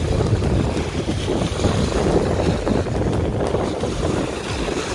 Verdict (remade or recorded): recorded